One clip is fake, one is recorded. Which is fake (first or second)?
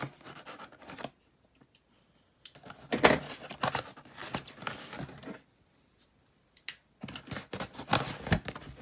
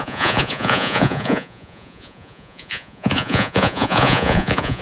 second